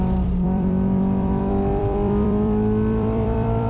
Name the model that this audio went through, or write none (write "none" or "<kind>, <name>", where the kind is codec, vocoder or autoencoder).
vocoder, BigVGAN v2